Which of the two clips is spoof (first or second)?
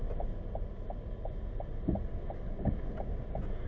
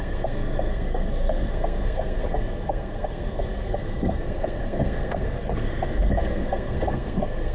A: second